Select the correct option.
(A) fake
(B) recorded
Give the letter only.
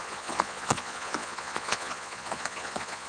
A